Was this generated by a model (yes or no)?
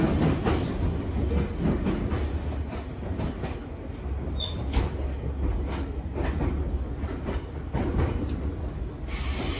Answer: no